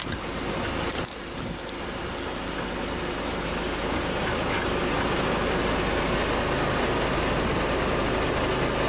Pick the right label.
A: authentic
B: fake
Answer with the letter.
A